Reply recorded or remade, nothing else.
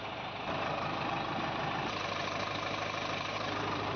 remade